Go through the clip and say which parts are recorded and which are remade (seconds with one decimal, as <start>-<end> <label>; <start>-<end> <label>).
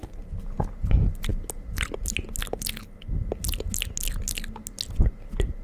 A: 0.0-5.6 recorded